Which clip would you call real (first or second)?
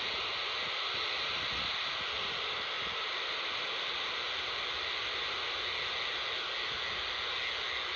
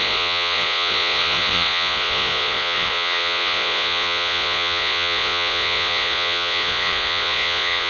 first